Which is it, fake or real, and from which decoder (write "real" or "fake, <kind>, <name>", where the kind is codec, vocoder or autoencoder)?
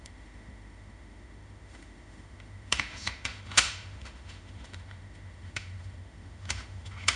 fake, autoencoder, DAC-VAE